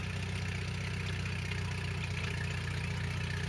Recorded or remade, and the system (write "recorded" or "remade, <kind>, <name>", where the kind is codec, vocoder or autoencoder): recorded